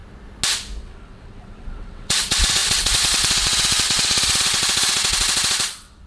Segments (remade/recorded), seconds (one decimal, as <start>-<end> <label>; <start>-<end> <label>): 0.0-0.8 recorded; 0.8-6.1 remade